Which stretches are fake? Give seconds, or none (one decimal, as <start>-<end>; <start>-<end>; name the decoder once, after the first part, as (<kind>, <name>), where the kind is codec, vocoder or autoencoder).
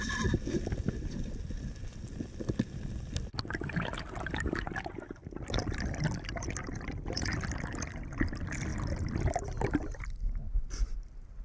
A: 5.2-5.9 (vocoder, BigVGAN v2); 8.7-10.0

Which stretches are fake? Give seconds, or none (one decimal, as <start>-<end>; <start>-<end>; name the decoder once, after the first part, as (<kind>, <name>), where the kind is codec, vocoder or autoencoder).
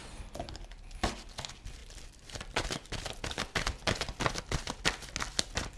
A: 0.0-0.9 (vocoder, BigVGAN v2); 1.8-4.4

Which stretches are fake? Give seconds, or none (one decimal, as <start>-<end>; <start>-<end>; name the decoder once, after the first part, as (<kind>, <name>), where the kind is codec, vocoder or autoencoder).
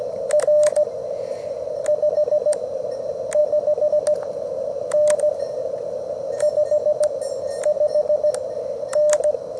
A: none